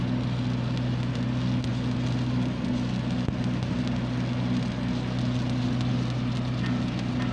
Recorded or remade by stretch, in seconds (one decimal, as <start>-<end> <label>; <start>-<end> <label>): 0.0-7.3 recorded